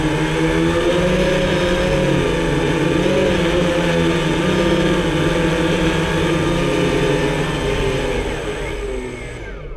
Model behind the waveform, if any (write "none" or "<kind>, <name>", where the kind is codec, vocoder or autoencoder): none